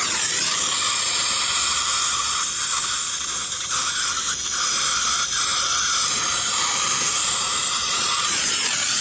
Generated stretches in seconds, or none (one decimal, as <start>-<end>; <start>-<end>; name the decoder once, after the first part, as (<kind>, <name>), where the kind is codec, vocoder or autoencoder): 7.8-8.5 (vocoder, Vocos)